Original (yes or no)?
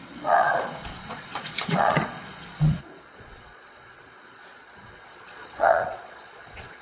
no